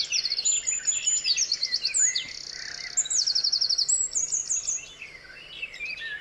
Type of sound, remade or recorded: recorded